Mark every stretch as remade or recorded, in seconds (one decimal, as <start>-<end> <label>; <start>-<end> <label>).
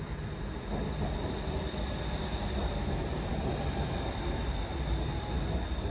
0.0-5.9 recorded